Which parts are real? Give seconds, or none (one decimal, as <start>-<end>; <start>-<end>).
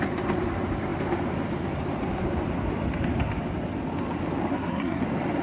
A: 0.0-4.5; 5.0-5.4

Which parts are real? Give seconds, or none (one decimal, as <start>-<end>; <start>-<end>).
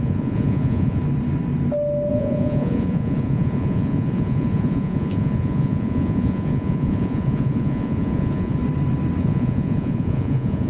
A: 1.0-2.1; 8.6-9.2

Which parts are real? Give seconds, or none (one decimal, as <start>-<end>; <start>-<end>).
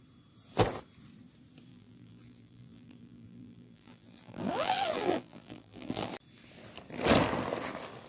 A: 0.0-1.7; 6.1-8.1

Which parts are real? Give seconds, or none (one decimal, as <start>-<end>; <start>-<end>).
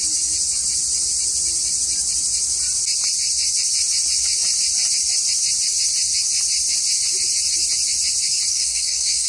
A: 0.0-8.5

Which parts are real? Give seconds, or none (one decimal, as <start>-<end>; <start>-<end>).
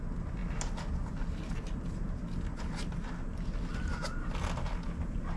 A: 0.0-5.4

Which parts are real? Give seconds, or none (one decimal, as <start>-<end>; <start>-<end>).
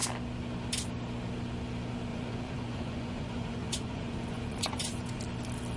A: 0.0-2.1; 5.2-5.8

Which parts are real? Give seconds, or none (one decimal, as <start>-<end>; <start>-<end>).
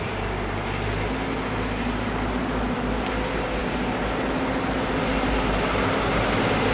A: 0.0-6.7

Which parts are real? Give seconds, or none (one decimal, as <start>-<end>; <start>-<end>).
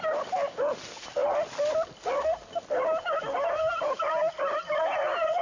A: 0.0-5.4